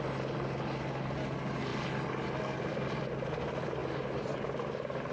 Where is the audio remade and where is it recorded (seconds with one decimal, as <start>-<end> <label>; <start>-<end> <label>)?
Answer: 0.0-5.1 recorded